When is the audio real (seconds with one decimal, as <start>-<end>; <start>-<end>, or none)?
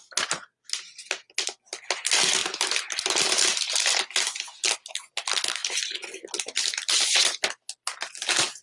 0.0-8.6